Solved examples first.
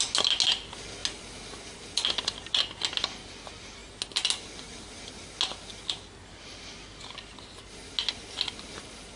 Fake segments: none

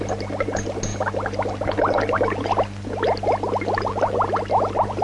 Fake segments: none

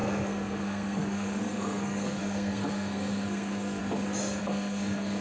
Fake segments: 0.0-3.8 (codec, SNAC); 4.4-5.2

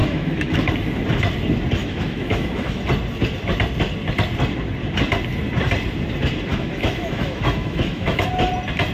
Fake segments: 0.0-0.7 (autoencoder, DAC-VAE); 1.8-2.8; 6.5-8.3

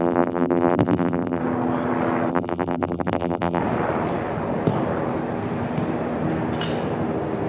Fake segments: 0.0-1.4 (vocoder, BigVGAN v2); 2.3-3.6

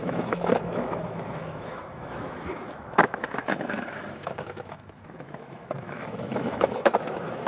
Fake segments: 0.0-7.5 (autoencoder, DAC-VAE)